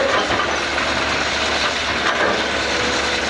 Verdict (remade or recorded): recorded